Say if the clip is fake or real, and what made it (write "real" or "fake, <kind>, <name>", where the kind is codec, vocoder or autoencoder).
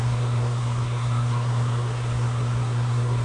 fake, codec, SNAC